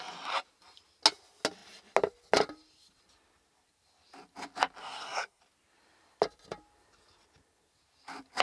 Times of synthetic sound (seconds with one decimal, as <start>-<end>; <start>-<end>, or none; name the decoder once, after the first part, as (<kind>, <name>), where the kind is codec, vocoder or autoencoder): 4.8-5.4 (codec, SNAC)

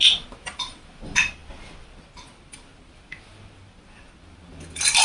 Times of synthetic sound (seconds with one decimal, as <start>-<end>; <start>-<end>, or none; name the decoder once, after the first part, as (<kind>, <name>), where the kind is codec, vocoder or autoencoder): none